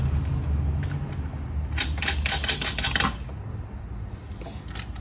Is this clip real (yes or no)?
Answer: yes